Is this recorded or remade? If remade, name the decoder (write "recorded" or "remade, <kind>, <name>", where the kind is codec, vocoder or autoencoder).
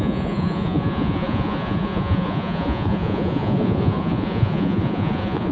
remade, vocoder, Vocos